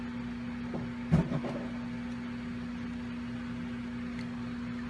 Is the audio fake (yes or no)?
no